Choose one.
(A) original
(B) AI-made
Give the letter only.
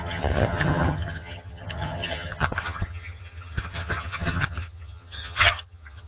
B